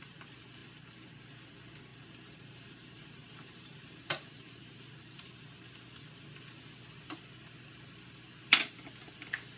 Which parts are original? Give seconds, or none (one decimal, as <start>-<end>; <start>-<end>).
0.0-1.9; 5.3-9.6